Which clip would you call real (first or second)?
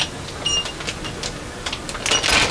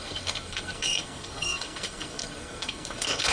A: first